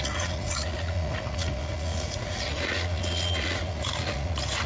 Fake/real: fake